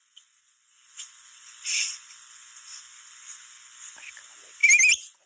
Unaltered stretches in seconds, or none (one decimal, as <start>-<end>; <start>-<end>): 0.0-5.3